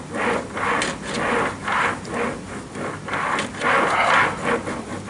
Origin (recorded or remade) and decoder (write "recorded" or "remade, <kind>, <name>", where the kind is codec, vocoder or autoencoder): recorded